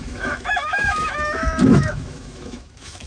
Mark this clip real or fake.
fake